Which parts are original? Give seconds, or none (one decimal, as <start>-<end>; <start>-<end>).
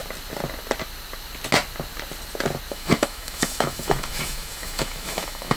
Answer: 0.0-2.7